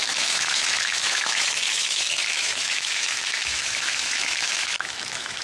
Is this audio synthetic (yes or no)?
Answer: yes